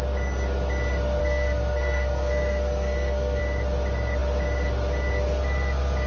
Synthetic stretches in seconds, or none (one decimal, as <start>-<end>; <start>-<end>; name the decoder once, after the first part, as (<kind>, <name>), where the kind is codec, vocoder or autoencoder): 1.2-3.4 (codec, SNAC)